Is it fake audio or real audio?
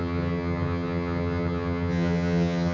fake